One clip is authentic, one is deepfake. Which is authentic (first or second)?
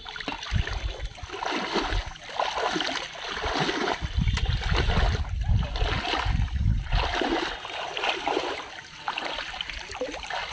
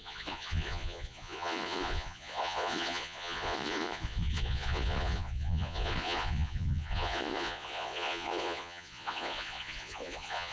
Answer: first